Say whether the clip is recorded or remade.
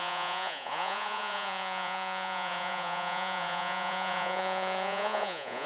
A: remade